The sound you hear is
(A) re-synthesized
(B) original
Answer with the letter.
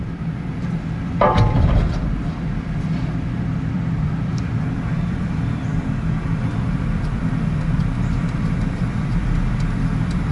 A